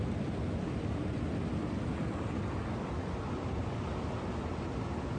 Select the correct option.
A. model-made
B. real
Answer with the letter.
B